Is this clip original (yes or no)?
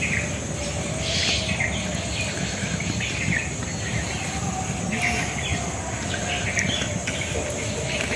yes